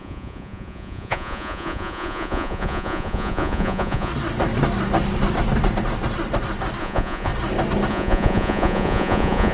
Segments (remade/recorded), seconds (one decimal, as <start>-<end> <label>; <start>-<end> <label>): 0.0-4.1 remade; 4.1-6.8 recorded; 6.8-7.3 remade; 7.3-7.9 recorded; 7.9-9.5 remade